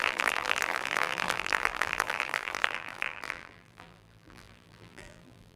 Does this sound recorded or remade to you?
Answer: remade